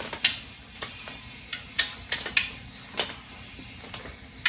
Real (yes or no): yes